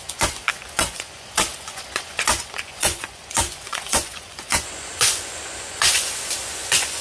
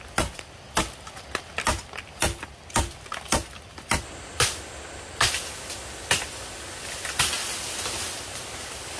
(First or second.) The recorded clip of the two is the second